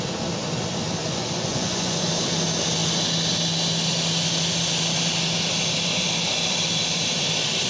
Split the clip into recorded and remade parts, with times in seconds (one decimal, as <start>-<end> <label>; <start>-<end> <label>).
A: 0.0-1.0 recorded; 1.0-2.1 remade; 2.1-7.7 recorded